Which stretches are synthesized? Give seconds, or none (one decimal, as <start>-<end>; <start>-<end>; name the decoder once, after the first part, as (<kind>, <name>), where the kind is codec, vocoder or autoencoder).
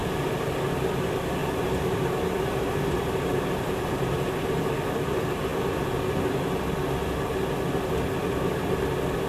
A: 0.0-0.5 (vocoder, BigVGAN v2); 1.4-4.3; 8.2-8.8